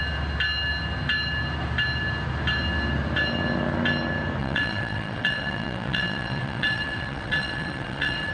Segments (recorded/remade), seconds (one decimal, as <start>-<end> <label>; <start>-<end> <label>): 0.0-4.4 recorded; 4.4-8.3 remade